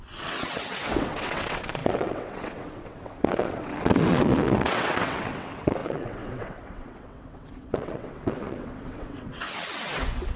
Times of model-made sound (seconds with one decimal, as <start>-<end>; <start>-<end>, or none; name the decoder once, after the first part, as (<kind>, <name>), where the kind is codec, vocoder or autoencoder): 0.0-10.4 (vocoder, WaveNeXt)